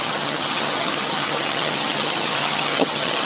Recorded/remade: remade